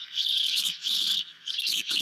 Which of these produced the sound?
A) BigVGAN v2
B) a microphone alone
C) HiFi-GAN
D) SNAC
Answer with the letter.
D